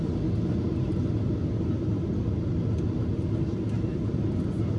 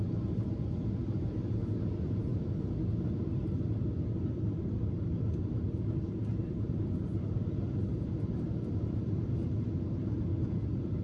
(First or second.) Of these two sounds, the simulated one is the second